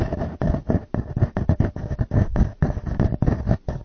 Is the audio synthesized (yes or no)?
no